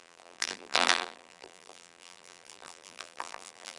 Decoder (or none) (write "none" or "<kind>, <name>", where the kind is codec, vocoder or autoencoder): vocoder, BigVGAN v2